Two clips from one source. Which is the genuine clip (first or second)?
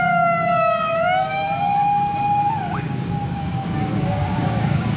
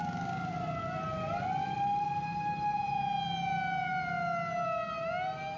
second